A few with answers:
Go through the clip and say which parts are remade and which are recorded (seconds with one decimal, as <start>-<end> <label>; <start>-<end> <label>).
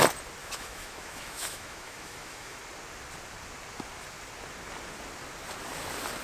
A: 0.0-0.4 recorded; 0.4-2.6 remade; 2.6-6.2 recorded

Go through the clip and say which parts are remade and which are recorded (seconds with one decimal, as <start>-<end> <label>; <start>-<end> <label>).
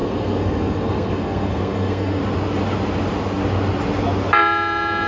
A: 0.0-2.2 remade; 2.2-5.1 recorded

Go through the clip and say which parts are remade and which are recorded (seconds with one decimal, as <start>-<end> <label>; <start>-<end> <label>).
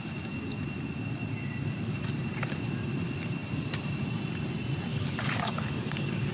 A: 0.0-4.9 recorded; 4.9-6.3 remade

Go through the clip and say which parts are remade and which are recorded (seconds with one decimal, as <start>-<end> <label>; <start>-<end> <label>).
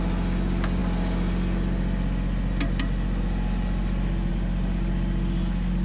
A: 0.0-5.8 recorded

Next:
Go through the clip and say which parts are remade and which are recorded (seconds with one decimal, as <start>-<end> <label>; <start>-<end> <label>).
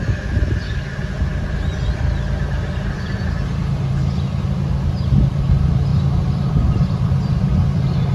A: 0.0-1.3 recorded; 1.3-3.9 remade; 3.9-5.9 recorded; 5.9-7.2 remade; 7.2-8.1 recorded